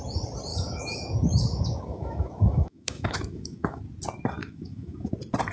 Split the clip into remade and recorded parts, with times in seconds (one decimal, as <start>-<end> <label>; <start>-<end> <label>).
0.0-0.5 recorded; 0.5-3.8 remade; 3.8-4.4 recorded; 4.4-5.1 remade; 5.1-5.5 recorded

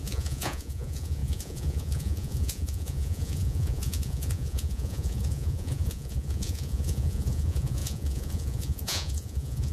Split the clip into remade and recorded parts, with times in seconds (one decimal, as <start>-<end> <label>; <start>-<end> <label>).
0.0-9.7 remade

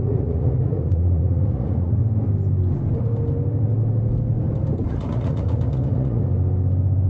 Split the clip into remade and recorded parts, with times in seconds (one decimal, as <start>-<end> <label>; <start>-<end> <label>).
0.0-2.0 remade; 2.0-4.9 recorded; 4.9-6.2 remade; 6.2-7.1 recorded

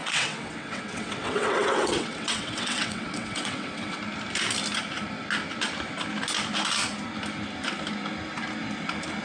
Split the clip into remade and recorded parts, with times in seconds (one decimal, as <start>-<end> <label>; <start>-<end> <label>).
0.0-4.0 remade; 4.0-9.2 recorded

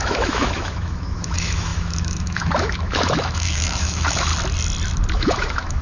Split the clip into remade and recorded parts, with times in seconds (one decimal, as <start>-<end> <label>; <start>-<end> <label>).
0.0-4.3 remade; 4.3-5.1 recorded; 5.1-5.8 remade

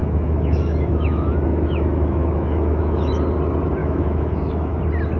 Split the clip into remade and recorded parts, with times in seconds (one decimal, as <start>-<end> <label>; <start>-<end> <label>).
0.0-3.1 remade; 3.1-3.8 recorded; 3.8-4.8 remade; 4.8-5.2 recorded